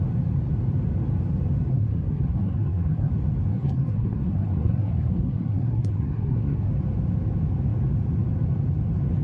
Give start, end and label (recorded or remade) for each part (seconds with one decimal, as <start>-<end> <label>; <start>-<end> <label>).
0.0-1.7 recorded; 1.7-3.1 remade; 3.1-3.5 recorded; 3.5-6.7 remade; 6.7-9.2 recorded